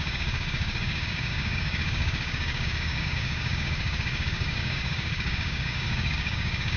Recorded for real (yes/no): no